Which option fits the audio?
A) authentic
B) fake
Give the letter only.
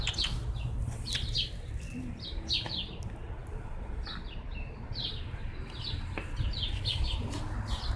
A